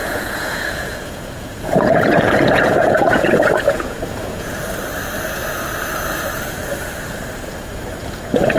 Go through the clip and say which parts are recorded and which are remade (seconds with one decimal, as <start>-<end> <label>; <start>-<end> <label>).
0.0-4.6 remade; 4.6-8.6 recorded